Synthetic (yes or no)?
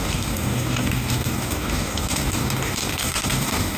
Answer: yes